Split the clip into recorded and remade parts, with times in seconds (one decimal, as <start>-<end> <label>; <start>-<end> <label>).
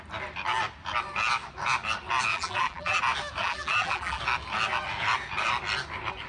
0.0-2.3 recorded; 2.3-3.0 remade; 3.0-3.4 recorded; 3.4-4.2 remade; 4.2-6.3 recorded